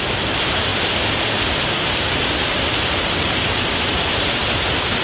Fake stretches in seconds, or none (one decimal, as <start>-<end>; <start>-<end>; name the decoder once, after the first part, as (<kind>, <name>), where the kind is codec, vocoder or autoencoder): none